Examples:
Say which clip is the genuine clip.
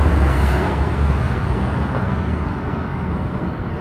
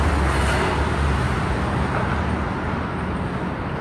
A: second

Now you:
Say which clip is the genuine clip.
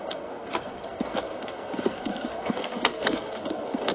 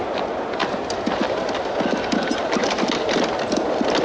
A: second